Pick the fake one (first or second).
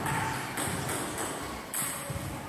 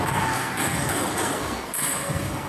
second